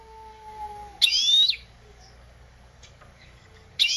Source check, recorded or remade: remade